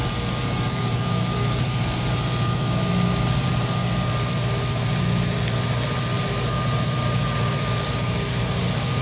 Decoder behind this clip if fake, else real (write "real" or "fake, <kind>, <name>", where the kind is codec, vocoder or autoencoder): real